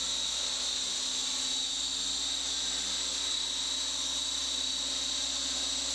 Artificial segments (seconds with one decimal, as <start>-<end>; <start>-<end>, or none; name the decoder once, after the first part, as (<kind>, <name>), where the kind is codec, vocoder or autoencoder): none